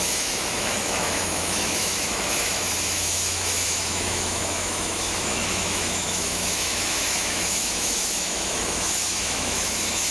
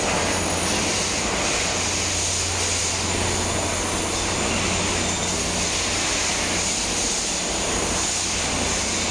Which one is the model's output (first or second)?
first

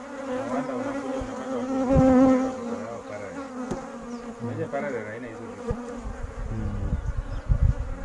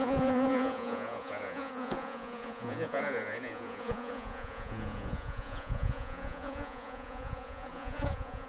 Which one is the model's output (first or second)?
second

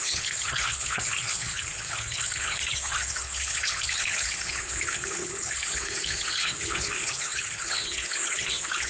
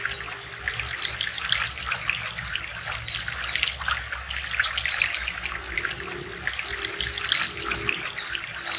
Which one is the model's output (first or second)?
first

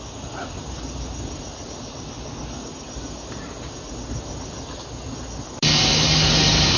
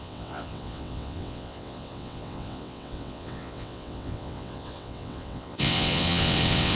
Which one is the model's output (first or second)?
second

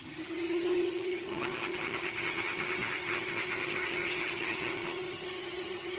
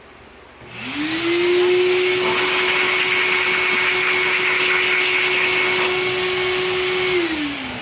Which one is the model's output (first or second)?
first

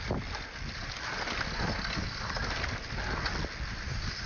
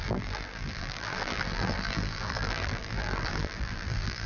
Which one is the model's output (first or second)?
second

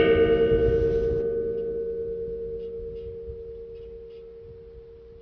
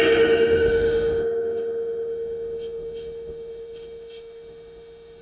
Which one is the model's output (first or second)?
second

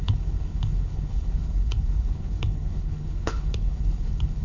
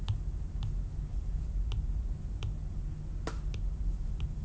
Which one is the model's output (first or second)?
first